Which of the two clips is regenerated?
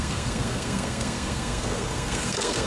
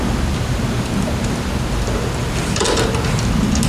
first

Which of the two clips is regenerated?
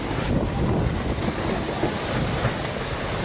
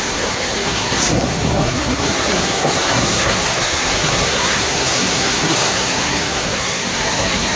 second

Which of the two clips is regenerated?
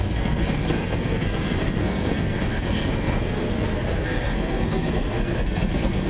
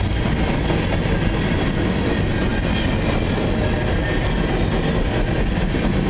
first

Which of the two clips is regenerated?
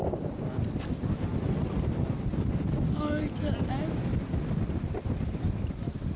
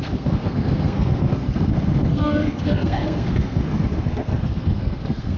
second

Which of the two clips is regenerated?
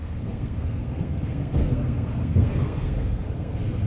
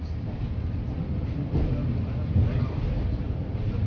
first